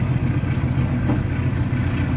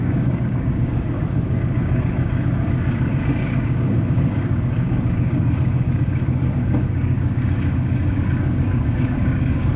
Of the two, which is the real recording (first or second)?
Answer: first